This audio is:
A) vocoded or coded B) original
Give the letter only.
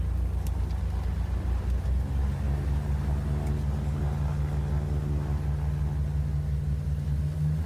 B